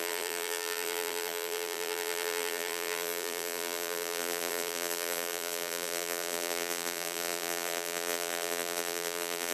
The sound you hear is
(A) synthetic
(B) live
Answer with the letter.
A